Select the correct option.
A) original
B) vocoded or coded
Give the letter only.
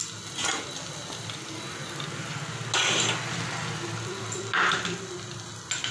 A